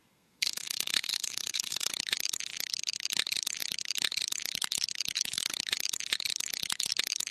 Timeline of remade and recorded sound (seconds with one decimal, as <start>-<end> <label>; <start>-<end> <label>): 0.0-1.9 remade; 1.9-7.3 recorded